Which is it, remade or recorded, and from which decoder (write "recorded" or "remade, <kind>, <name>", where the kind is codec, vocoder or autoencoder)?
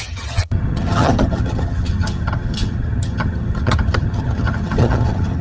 remade, vocoder, HiFi-GAN